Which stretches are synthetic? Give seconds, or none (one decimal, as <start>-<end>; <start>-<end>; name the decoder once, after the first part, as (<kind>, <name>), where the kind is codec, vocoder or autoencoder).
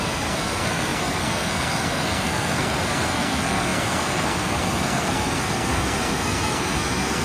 0.0-7.2 (codec, SNAC)